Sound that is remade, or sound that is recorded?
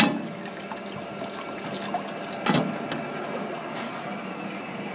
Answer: recorded